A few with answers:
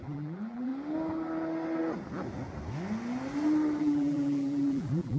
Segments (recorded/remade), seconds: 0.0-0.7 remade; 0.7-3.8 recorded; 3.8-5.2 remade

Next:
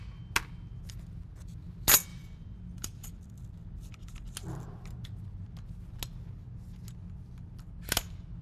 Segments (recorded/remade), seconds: 0.0-2.1 recorded; 2.1-4.1 remade; 4.1-8.4 recorded

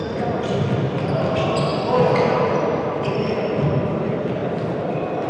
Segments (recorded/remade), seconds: 0.0-5.3 recorded

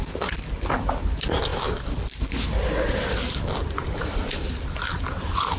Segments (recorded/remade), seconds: 0.0-5.6 recorded